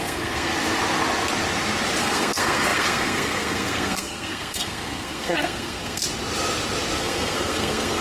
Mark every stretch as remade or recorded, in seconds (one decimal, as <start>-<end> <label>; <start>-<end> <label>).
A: 0.0-0.5 remade; 0.5-2.0 recorded; 2.0-6.0 remade; 6.0-7.0 recorded; 7.0-8.0 remade